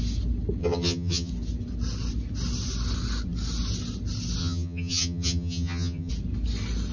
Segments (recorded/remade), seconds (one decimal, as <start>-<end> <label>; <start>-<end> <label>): 0.0-0.6 recorded; 0.6-1.3 remade; 1.3-4.4 recorded; 4.4-6.1 remade; 6.1-6.9 recorded